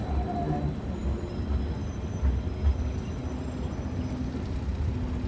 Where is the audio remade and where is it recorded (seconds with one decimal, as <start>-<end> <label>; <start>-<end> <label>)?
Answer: 0.0-5.3 recorded

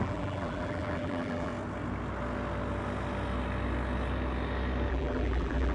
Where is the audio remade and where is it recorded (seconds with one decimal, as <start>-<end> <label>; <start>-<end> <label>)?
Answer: 0.0-1.5 remade; 1.5-4.9 recorded; 4.9-5.7 remade